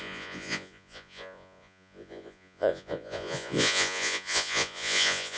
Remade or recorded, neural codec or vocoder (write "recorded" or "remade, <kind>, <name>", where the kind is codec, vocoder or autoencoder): remade, vocoder, Vocos